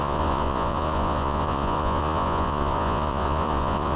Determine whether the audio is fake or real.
fake